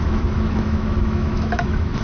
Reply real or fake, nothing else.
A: fake